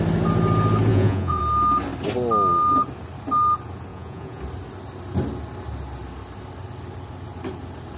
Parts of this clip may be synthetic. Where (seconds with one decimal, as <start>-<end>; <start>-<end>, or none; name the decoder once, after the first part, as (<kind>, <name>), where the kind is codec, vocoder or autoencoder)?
0.9-1.4 (vocoder, Vocos); 3.9-4.4

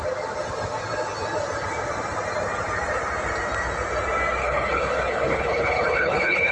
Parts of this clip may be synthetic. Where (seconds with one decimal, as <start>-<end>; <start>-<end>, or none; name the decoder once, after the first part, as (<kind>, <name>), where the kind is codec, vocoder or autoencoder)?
4.4-6.5 (codec, HILCodec)